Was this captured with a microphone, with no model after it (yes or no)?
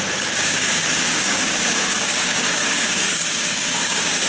no